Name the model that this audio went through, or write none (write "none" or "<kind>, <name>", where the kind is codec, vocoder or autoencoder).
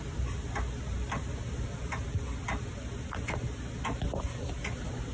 none